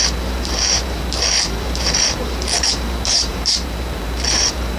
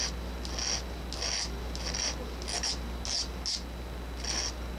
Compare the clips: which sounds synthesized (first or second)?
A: first